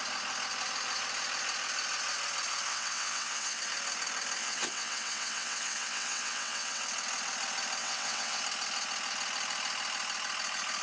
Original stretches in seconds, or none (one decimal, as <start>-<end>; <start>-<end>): 0.0-2.7; 3.6-4.4; 6.8-7.8; 8.4-10.8